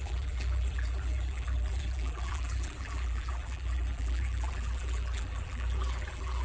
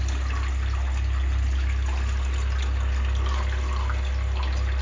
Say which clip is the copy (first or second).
first